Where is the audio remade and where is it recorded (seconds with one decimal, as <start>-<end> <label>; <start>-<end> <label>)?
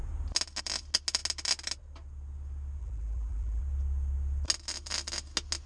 0.0-2.8 recorded; 2.8-3.6 remade; 3.6-5.7 recorded